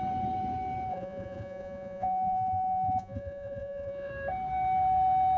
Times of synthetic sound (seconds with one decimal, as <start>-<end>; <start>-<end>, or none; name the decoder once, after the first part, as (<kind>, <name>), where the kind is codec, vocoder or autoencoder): 0.9-4.1 (vocoder, Vocos)